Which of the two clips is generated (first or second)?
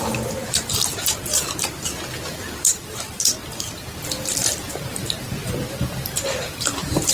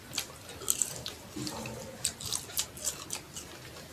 first